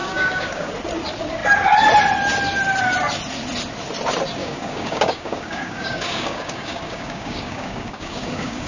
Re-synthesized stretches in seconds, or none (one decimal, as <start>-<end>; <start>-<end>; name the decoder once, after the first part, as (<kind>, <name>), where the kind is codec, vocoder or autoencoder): 0.0-0.7 (codec, DAC); 4.4-8.7